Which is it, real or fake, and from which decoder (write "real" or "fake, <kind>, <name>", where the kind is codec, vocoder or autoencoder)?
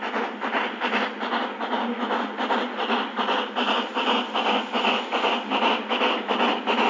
real